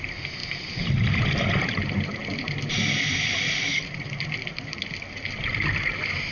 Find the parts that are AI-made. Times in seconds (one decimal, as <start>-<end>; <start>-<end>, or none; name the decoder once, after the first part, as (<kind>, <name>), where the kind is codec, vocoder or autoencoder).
none